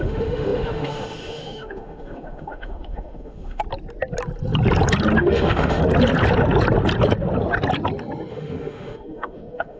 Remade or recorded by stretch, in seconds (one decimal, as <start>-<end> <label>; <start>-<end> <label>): 0.0-3.6 remade; 3.6-5.2 recorded; 5.2-5.8 remade; 5.8-8.3 recorded; 8.3-9.8 remade